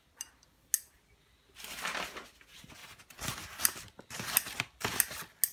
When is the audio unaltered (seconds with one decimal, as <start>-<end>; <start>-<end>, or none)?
0.0-5.5